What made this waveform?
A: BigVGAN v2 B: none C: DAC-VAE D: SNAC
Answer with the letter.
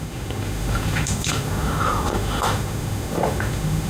C